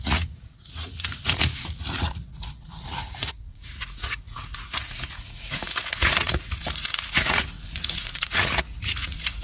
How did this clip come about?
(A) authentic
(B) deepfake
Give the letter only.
B